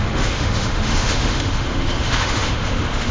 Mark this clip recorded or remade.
remade